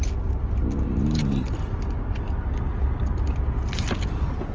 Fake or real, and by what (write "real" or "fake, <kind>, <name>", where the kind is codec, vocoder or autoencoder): real